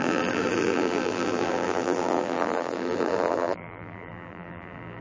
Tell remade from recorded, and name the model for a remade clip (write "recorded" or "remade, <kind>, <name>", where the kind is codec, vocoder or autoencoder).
remade, vocoder, BigVGAN v2